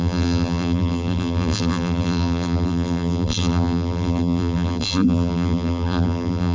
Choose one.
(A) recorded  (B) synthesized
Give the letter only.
B